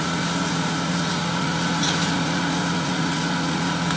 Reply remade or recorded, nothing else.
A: remade